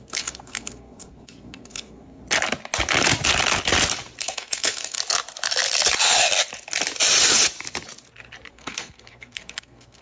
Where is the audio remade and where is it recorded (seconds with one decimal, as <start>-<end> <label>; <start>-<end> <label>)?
0.0-2.2 remade; 2.2-4.2 recorded; 4.2-5.0 remade; 5.0-8.5 recorded; 8.5-10.0 remade